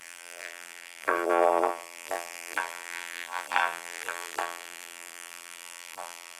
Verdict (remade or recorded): remade